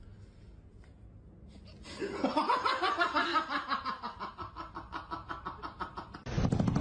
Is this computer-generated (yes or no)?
no